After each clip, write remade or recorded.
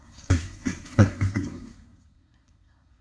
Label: remade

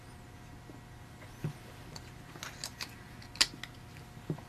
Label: recorded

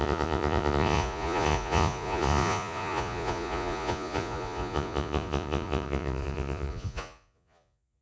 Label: remade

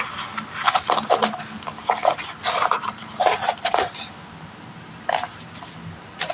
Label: recorded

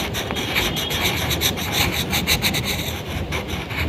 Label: remade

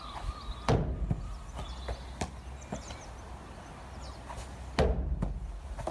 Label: recorded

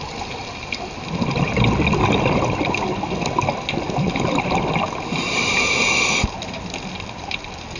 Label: recorded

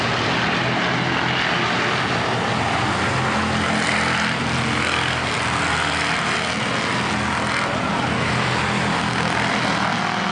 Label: recorded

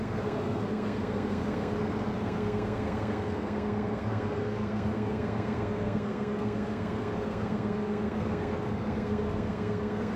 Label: remade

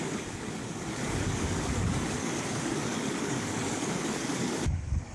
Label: remade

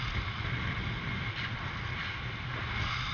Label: recorded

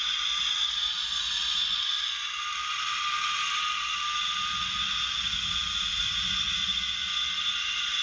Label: recorded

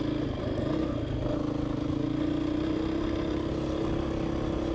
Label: recorded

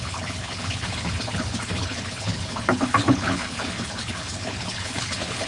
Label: remade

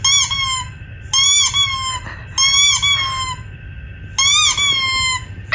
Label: recorded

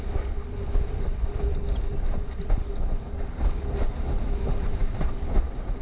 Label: recorded